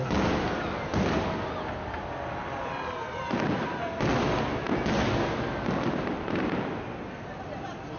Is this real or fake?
real